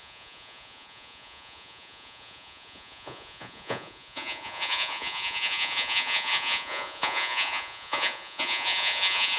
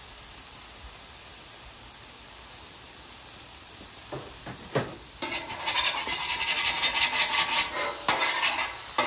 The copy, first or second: first